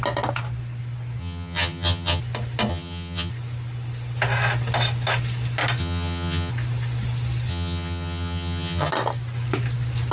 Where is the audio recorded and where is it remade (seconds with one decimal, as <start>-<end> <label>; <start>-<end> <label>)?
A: 0.0-1.2 recorded; 1.2-2.2 remade; 2.2-2.7 recorded; 2.7-3.3 remade; 3.3-5.8 recorded; 5.8-6.5 remade; 6.5-7.5 recorded; 7.5-8.9 remade; 8.9-10.1 recorded